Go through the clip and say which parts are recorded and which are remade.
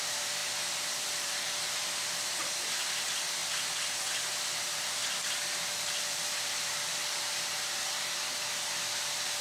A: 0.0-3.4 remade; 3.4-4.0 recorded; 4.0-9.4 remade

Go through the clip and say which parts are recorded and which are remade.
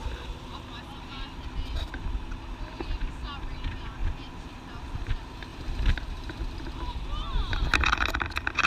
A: 0.0-0.5 recorded; 0.5-3.1 remade; 3.1-4.0 recorded; 4.0-5.1 remade; 5.1-5.5 recorded; 5.5-6.9 remade; 6.9-8.7 recorded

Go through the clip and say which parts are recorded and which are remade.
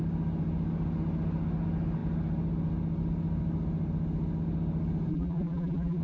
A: 0.0-5.1 recorded; 5.1-6.0 remade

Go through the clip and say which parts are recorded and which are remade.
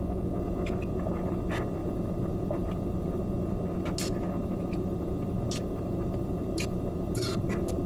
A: 0.0-1.8 recorded; 1.8-3.2 remade; 3.2-4.4 recorded; 4.4-7.9 remade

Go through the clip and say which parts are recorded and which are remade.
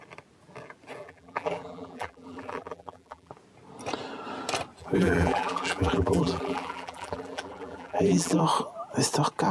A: 0.0-1.0 recorded; 1.0-3.3 remade; 3.3-4.8 recorded; 4.8-8.4 remade; 8.4-9.5 recorded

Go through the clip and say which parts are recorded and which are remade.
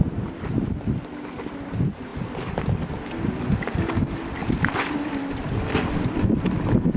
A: 0.0-2.1 recorded; 2.1-3.4 remade; 3.4-4.4 recorded; 4.4-5.2 remade; 5.2-7.0 recorded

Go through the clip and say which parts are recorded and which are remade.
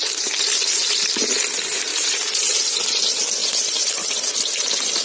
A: 0.0-3.4 recorded; 3.4-4.1 remade; 4.1-5.0 recorded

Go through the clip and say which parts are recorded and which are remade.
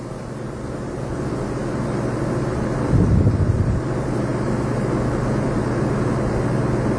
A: 0.0-7.0 recorded